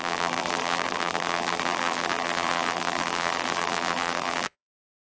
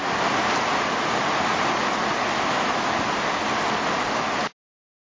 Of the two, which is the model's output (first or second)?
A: first